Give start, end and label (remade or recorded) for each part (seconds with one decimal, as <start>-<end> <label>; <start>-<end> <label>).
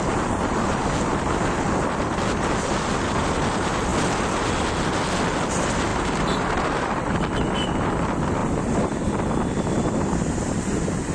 0.0-0.8 remade; 0.8-3.1 recorded; 3.1-3.9 remade; 3.9-5.5 recorded; 5.5-11.1 remade